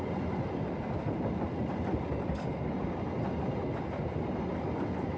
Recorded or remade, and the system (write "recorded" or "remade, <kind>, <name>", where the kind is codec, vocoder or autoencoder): recorded